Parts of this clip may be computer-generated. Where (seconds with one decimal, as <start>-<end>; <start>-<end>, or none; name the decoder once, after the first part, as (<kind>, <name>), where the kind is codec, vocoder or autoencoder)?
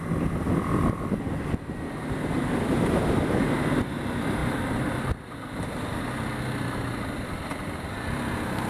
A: none